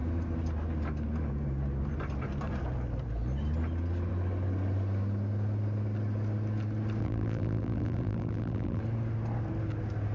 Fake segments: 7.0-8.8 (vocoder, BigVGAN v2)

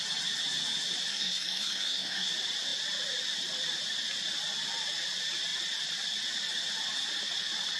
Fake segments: 1.1-2.3 (codec, SNAC)